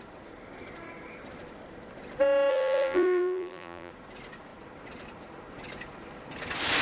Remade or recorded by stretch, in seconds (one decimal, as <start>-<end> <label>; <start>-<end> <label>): 0.0-2.5 recorded; 2.5-3.9 remade; 3.9-6.8 recorded